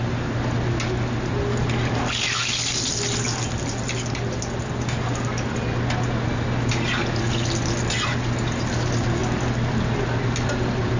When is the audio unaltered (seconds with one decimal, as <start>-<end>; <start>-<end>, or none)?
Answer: 0.0-11.0